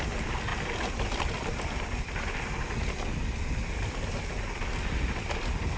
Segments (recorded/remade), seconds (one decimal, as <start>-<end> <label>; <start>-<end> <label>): 0.0-5.8 recorded